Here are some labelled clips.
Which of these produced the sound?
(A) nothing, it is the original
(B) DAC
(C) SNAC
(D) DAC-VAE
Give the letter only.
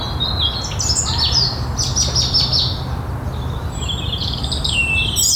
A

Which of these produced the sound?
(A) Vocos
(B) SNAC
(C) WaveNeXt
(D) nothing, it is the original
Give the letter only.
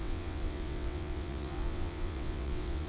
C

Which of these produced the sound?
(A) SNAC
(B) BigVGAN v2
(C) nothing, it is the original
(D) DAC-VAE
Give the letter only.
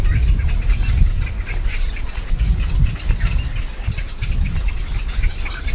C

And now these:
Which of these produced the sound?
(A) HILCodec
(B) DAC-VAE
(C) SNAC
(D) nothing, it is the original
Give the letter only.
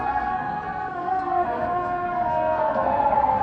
C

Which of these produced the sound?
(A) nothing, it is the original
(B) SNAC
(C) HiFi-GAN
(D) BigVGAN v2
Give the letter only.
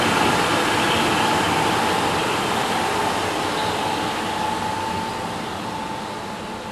A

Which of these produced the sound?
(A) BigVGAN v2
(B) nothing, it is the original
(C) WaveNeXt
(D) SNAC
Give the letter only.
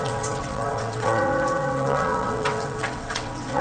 C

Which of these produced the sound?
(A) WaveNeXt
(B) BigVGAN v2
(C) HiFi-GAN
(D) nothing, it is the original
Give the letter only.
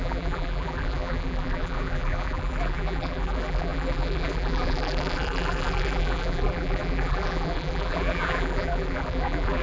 B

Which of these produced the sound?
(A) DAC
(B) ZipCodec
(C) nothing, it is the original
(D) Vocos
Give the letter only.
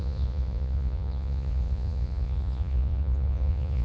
D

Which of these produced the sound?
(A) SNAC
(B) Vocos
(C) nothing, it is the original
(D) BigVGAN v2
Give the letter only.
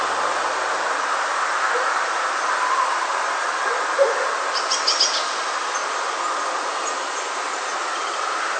C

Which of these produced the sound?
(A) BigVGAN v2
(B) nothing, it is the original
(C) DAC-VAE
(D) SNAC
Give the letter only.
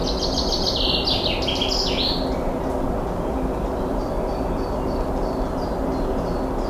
B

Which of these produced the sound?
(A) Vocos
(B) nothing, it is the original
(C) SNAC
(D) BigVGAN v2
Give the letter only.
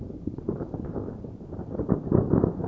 D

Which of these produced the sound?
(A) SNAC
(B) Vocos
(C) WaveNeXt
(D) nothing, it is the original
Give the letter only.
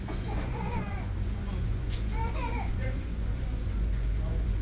B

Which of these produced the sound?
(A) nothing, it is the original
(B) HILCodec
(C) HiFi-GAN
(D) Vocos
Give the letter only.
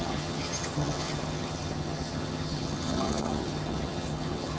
C